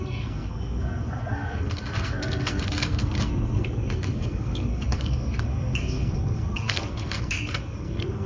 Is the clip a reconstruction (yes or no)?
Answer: yes